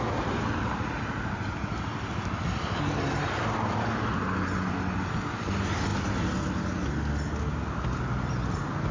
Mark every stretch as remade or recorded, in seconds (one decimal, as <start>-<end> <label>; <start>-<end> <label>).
0.0-8.9 recorded